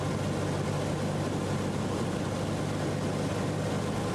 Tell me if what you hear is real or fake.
real